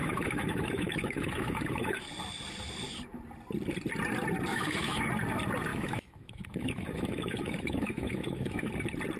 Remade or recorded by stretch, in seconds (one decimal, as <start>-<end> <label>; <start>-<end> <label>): 0.0-2.0 remade; 2.0-4.5 recorded; 4.5-5.1 remade; 5.1-5.7 recorded; 5.7-8.7 remade; 8.7-9.2 recorded